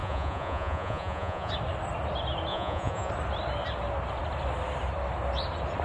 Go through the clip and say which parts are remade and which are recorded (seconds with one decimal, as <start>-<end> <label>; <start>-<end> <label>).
0.0-1.5 remade; 1.5-2.5 recorded; 2.5-3.1 remade; 3.1-5.8 recorded